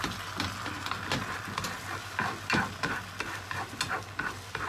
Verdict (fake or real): real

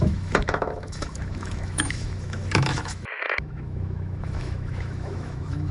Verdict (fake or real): fake